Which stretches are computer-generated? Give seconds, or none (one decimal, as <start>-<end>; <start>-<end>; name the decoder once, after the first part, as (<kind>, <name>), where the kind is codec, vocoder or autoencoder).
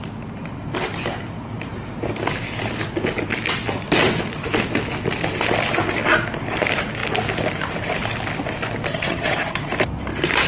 8.9-9.7 (vocoder, HiFi-GAN)